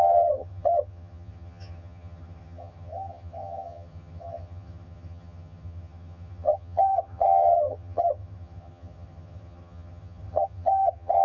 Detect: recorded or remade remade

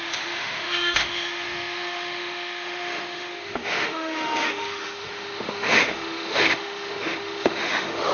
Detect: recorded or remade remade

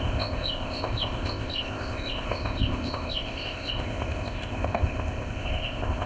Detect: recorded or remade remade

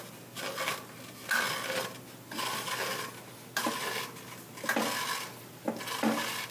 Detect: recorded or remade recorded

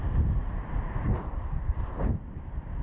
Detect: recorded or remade remade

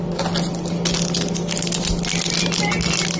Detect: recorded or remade recorded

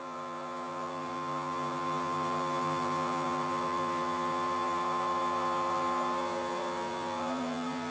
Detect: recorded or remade remade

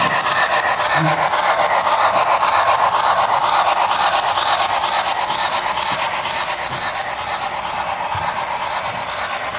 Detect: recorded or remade recorded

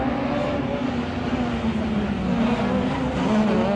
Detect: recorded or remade recorded